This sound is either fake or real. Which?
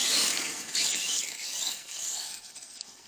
fake